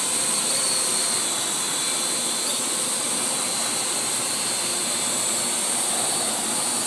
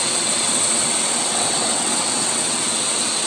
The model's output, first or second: second